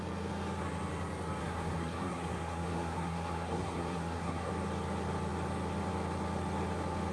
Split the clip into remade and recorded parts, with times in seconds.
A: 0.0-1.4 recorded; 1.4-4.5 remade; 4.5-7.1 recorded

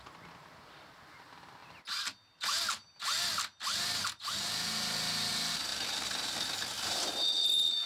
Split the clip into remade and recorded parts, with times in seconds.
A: 0.0-7.9 recorded

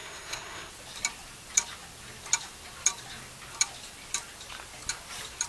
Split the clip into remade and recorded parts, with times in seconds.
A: 0.0-0.7 remade; 0.7-5.5 recorded

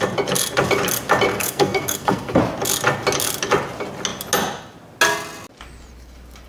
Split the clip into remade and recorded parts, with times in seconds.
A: 0.0-1.3 recorded; 1.3-2.4 remade; 2.4-6.5 recorded

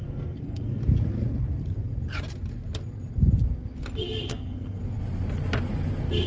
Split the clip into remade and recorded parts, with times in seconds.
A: 0.0-0.8 remade; 0.8-4.3 recorded; 4.3-4.8 remade; 4.8-6.3 recorded

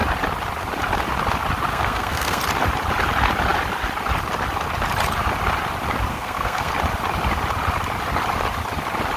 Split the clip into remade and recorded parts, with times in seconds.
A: 0.0-1.7 recorded; 1.7-2.4 remade; 2.4-6.1 recorded; 6.1-6.7 remade; 6.7-9.2 recorded

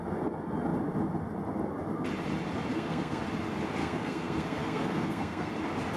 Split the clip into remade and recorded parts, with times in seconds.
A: 0.0-2.7 recorded; 2.7-3.2 remade; 3.2-3.8 recorded; 3.8-5.5 remade; 5.5-6.0 recorded

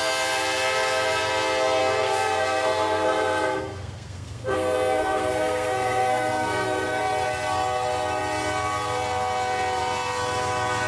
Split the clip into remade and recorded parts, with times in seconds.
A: 0.0-1.8 recorded; 1.8-7.0 remade; 7.0-10.9 recorded